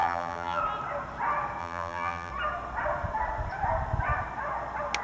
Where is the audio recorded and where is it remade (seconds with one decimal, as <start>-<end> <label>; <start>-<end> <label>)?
0.0-0.6 remade; 0.6-1.6 recorded; 1.6-2.3 remade; 2.3-5.0 recorded